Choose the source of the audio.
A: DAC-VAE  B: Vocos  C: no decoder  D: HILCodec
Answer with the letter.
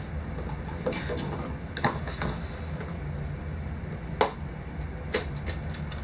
C